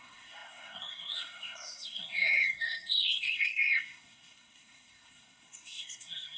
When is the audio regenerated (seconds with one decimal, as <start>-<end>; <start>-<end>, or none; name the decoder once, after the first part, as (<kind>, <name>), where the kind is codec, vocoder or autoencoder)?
0.0-6.4 (codec, SNAC)

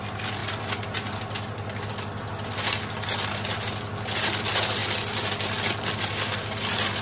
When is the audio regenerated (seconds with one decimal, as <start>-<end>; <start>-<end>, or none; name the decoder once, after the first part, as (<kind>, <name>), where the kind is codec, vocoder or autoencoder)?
none

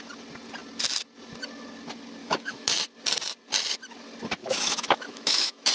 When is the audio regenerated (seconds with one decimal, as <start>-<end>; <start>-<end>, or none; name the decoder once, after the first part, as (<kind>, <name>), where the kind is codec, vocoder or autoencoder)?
2.2-2.8 (autoencoder, DAC-VAE); 4.4-5.7

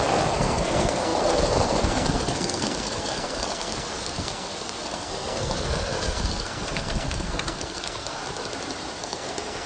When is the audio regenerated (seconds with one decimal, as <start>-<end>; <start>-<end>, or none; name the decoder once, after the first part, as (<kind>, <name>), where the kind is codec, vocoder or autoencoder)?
0.0-8.2 (codec, SNAC); 9.0-9.7

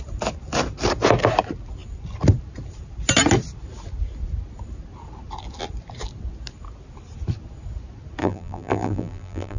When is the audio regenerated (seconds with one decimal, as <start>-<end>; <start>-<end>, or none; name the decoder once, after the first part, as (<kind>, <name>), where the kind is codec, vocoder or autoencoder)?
8.2-9.6 (vocoder, BigVGAN v2)

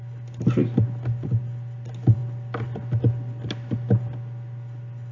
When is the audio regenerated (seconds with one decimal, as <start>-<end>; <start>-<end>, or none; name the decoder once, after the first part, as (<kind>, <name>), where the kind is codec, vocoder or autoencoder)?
none

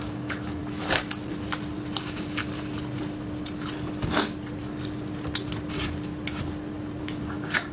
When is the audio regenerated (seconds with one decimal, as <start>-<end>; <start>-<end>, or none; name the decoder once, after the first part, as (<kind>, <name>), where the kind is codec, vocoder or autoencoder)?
0.0-0.6 (codec, DAC); 2.0-2.4; 7.0-7.7